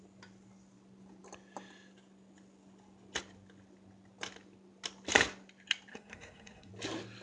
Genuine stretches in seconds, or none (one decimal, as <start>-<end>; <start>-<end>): 0.0-5.9; 6.7-7.2